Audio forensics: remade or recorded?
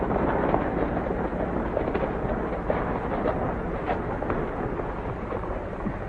recorded